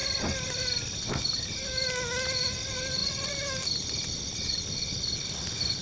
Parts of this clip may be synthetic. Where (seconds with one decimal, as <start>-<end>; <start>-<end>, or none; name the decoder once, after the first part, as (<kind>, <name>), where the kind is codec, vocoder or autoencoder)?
none